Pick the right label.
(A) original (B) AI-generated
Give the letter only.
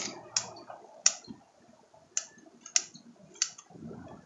A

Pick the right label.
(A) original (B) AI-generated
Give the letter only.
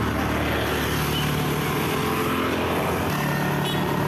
A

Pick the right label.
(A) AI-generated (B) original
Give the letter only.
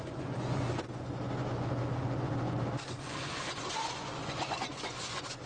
A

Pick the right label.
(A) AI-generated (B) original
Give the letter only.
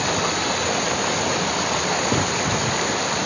B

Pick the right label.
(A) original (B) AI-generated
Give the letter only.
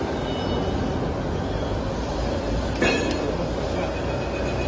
A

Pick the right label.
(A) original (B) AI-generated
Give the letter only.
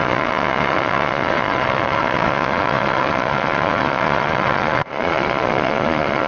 B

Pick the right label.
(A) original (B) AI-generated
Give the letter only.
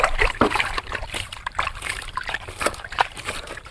B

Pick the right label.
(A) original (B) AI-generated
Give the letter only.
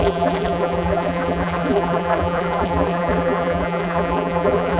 B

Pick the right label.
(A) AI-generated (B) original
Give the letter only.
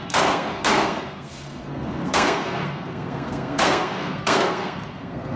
A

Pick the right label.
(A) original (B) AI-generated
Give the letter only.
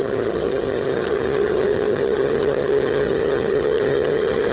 B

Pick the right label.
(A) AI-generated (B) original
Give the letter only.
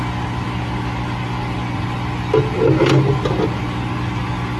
B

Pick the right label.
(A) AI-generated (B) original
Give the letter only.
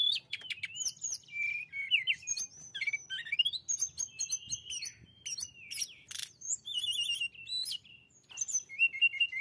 B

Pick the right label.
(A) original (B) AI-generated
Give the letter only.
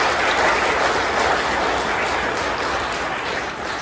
A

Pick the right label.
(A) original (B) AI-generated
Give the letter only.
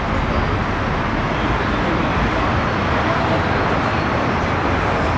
A